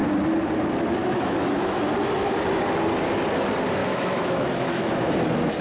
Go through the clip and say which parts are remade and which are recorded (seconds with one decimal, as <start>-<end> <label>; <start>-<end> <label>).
0.0-1.0 recorded; 1.0-1.8 remade; 1.8-3.8 recorded; 3.8-4.9 remade; 4.9-5.6 recorded